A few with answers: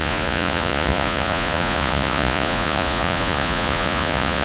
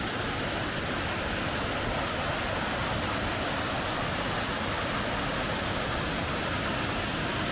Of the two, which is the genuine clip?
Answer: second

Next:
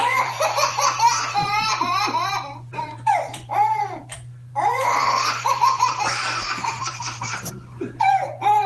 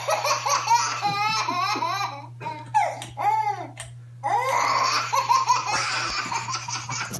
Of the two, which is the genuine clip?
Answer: second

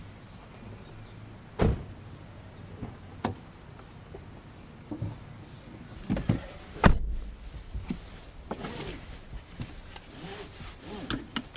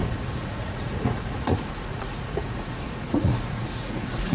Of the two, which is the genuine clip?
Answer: first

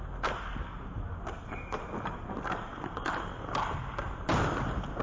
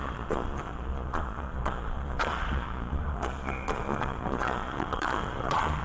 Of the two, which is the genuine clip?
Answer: first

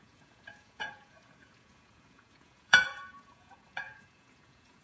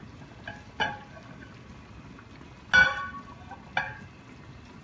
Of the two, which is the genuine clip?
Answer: second